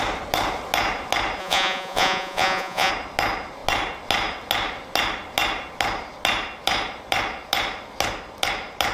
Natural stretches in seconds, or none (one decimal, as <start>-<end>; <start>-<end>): 0.0-1.4; 2.9-8.9

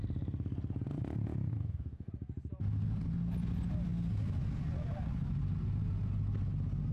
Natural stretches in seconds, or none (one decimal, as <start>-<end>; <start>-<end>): 0.0-1.5; 2.1-6.9

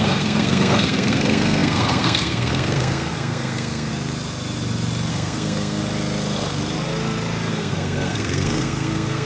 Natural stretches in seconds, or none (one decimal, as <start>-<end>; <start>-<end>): 3.9-5.1; 5.8-7.5

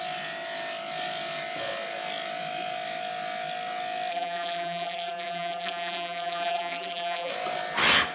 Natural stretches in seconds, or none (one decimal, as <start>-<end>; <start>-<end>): 0.0-4.1; 7.3-8.1

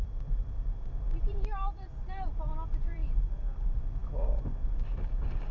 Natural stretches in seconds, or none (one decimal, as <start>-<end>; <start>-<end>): 3.0-3.6; 4.0-4.8

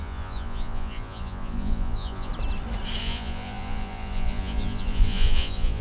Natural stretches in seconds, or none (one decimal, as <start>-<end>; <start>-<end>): 2.3-3.0

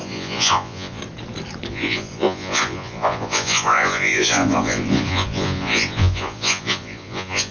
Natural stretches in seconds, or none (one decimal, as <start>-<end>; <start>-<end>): 1.0-1.7